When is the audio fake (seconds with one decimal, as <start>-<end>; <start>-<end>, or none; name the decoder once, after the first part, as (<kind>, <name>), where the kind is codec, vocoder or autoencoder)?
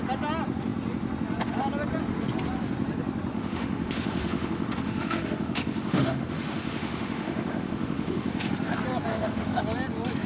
3.3-8.5 (autoencoder, DAC-VAE); 9.1-9.6